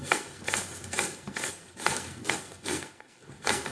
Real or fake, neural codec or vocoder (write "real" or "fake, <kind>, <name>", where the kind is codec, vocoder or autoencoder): fake, codec, SNAC